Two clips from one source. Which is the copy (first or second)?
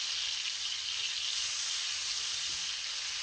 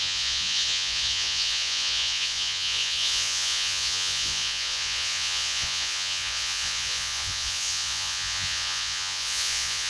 second